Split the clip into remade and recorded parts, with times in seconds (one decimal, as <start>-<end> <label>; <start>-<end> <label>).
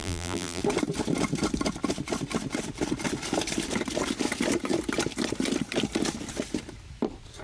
0.0-0.6 remade; 0.6-7.4 recorded